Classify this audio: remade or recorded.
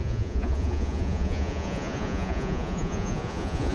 remade